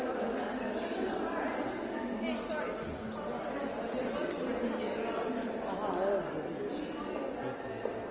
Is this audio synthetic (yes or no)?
no